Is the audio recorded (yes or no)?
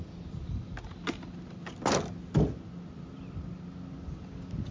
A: yes